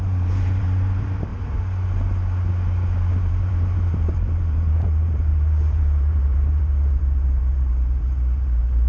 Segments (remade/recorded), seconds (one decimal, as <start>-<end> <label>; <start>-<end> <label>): 0.0-1.3 remade; 1.3-3.1 recorded; 3.1-8.9 remade